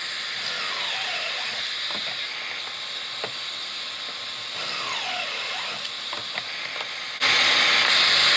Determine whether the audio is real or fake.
real